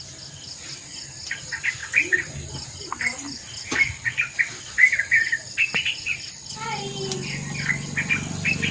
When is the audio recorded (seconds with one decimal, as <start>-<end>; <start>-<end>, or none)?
0.0-8.7